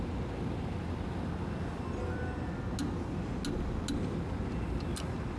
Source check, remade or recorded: recorded